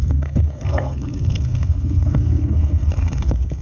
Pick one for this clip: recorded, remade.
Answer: remade